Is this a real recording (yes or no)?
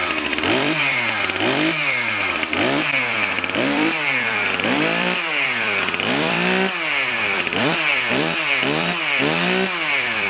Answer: no